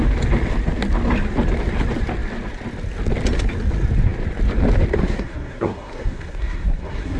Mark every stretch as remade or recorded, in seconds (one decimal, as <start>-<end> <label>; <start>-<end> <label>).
0.0-5.0 recorded; 5.0-7.2 remade

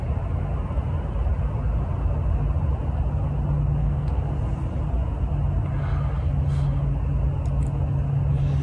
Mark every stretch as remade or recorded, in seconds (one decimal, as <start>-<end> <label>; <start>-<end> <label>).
0.0-3.8 recorded; 3.8-4.4 remade; 4.4-8.6 recorded

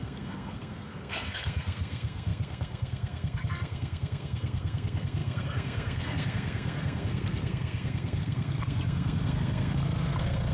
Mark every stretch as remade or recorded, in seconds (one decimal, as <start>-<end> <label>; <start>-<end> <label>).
0.0-10.5 remade

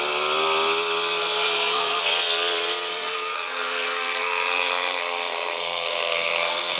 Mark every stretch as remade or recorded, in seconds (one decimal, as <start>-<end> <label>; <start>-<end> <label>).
0.0-1.2 recorded; 1.2-2.0 remade; 2.0-2.9 recorded; 2.9-6.8 remade

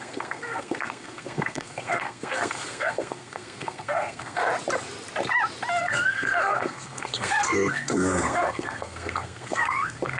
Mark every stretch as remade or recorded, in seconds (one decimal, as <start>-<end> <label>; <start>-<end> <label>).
0.0-4.4 remade; 4.4-5.8 recorded; 5.8-10.2 remade